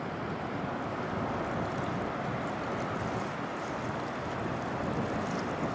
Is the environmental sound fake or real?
real